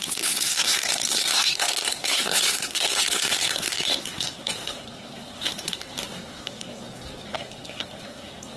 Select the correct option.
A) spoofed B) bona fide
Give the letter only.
A